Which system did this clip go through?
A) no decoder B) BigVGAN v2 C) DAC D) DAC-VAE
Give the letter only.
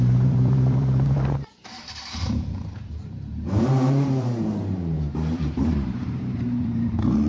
B